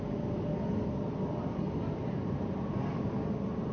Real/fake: real